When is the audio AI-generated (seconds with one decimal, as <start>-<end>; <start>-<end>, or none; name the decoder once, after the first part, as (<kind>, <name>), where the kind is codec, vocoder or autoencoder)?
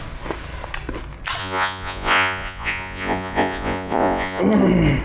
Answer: 1.4-4.4 (vocoder, Vocos)